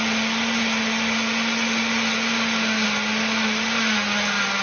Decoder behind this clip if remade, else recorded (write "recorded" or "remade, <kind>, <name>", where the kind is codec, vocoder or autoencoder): recorded